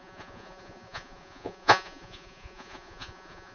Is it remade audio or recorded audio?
remade